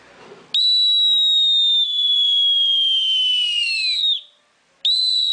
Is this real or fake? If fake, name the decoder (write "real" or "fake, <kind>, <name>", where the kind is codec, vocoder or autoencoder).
real